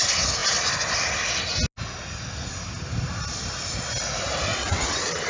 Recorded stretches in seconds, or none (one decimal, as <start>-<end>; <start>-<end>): 0.0-4.5